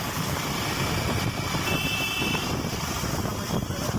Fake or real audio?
real